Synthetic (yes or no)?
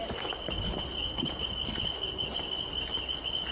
no